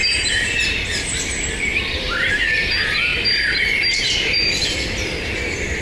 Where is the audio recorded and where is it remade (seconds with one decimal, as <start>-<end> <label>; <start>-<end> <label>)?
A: 0.0-5.8 remade